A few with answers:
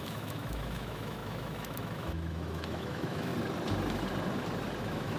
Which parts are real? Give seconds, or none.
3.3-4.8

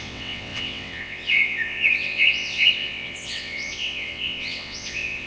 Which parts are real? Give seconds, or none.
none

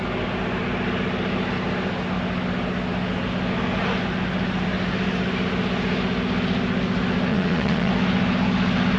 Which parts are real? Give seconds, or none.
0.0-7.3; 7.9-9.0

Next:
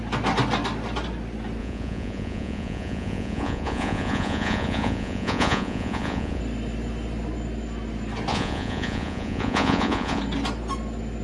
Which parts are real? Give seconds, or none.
0.0-1.6; 6.4-8.3; 10.2-11.2

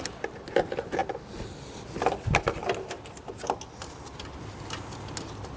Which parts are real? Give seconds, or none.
0.0-5.6

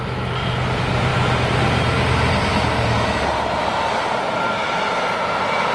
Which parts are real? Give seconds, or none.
0.0-5.7

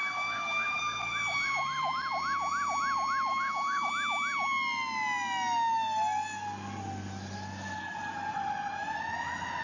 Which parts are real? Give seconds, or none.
0.8-3.3; 3.9-9.6